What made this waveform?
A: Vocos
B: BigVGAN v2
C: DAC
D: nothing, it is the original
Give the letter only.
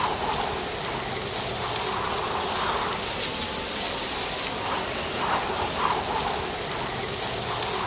D